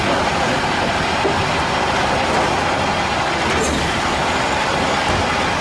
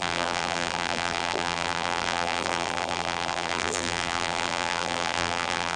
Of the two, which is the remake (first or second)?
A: second